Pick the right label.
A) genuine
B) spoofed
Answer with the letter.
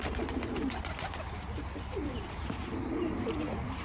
B